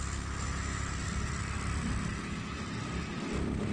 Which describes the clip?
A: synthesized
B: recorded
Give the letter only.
B